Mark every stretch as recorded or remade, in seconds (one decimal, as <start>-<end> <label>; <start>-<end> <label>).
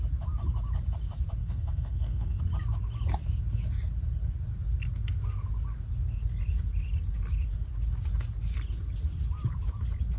0.0-1.4 recorded; 1.4-2.4 remade; 2.4-10.2 recorded